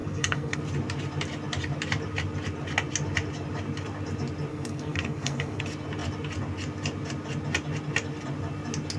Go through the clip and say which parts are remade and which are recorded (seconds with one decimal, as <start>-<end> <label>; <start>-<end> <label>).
0.0-0.6 remade; 0.6-4.5 recorded; 4.5-5.6 remade; 5.6-9.0 recorded